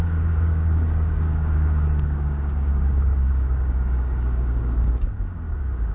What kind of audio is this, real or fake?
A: fake